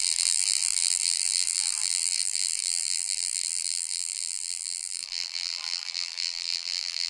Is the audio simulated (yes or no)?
yes